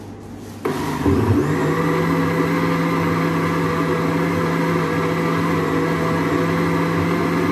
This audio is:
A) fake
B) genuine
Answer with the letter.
B